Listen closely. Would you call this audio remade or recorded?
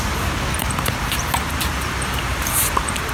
remade